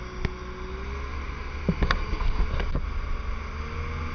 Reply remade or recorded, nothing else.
recorded